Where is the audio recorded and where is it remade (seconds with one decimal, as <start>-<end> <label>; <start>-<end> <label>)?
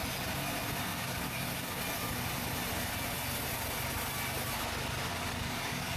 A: 0.0-0.9 recorded; 0.9-1.8 remade; 1.8-5.1 recorded; 5.1-6.0 remade